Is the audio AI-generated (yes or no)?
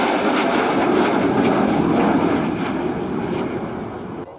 no